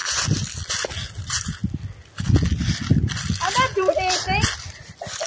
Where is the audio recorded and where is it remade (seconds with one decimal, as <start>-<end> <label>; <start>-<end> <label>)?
0.0-5.3 recorded